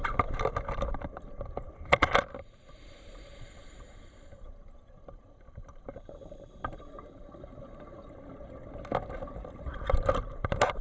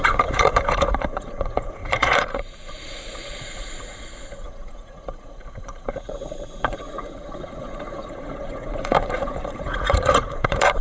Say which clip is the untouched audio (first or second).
first